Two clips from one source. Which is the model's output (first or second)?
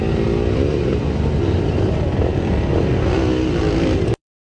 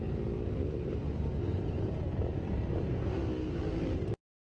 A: second